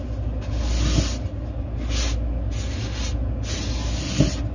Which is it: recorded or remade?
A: recorded